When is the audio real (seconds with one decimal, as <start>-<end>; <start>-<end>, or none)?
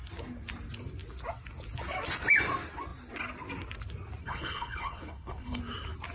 0.0-4.2; 5.6-6.1